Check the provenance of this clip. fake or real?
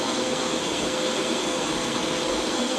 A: fake